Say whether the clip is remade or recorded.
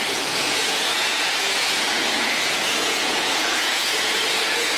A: remade